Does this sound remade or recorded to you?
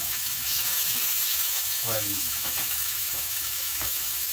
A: remade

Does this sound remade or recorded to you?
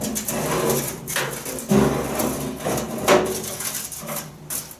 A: recorded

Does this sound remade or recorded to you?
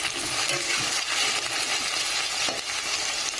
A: recorded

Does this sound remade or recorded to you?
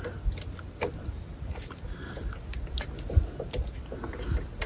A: recorded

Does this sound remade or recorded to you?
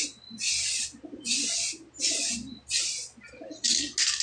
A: recorded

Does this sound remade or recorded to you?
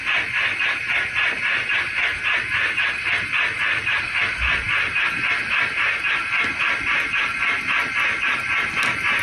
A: recorded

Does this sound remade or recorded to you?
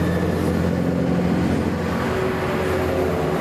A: recorded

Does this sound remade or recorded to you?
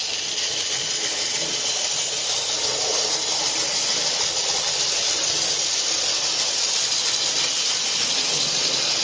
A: recorded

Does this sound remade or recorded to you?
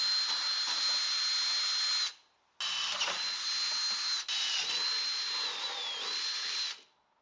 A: recorded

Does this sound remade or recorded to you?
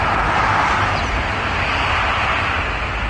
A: recorded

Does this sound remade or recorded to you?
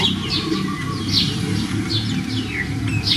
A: recorded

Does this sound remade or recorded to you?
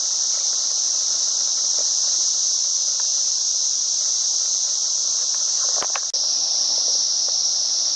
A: recorded